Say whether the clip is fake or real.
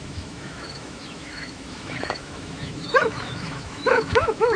fake